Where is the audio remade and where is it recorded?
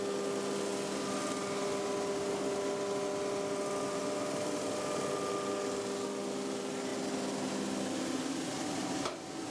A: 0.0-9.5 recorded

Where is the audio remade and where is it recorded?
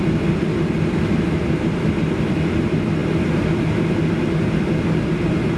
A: 0.0-5.6 recorded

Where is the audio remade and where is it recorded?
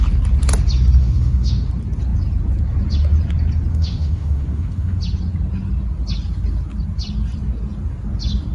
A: 0.0-1.0 recorded; 1.0-1.7 remade; 1.7-3.7 recorded; 3.7-5.0 remade; 5.0-8.5 recorded